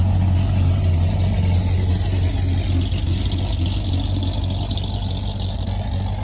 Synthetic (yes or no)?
no